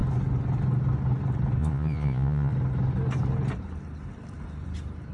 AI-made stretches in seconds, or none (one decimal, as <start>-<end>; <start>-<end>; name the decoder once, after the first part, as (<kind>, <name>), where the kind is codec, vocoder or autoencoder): 1.6-2.5 (vocoder, Vocos)